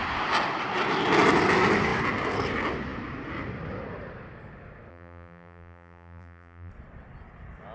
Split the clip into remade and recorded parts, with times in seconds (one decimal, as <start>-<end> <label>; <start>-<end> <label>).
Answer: 0.0-4.9 recorded; 4.9-6.7 remade; 6.7-7.7 recorded